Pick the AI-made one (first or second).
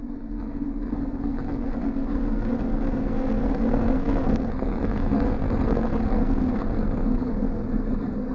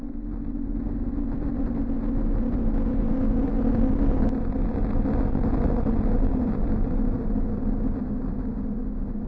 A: first